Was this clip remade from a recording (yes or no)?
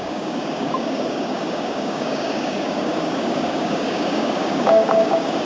yes